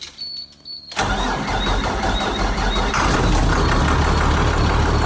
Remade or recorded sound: recorded